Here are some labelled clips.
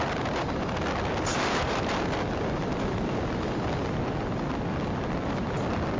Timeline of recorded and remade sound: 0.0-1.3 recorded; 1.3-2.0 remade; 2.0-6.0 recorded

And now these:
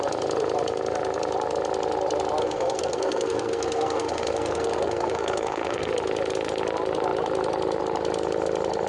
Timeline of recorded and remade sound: 0.0-2.4 recorded; 2.4-5.9 remade; 5.9-8.9 recorded

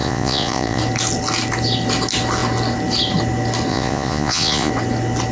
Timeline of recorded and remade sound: 0.0-0.8 remade; 0.8-3.7 recorded; 3.7-4.7 remade; 4.7-5.3 recorded

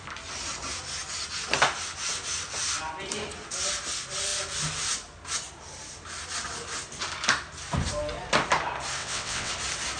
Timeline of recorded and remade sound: 0.0-9.0 recorded; 9.0-9.5 remade; 9.5-10.0 recorded